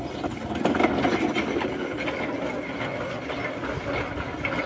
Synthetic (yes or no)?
no